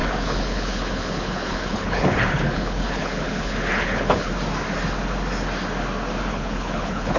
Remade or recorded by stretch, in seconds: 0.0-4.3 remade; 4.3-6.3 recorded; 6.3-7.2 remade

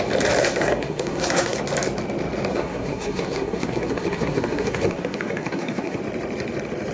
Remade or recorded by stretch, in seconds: 0.0-0.4 recorded; 0.4-1.6 remade; 1.6-2.5 recorded; 2.5-6.0 remade; 6.0-6.9 recorded

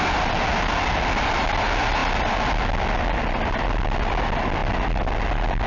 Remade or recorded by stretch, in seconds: 0.0-5.7 recorded

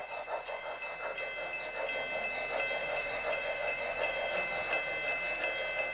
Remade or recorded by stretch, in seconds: 0.0-0.8 remade; 0.8-2.8 recorded; 2.8-4.3 remade; 4.3-5.9 recorded